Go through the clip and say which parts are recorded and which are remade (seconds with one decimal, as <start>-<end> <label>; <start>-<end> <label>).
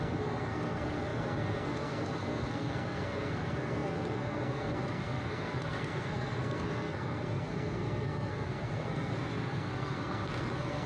0.0-10.9 remade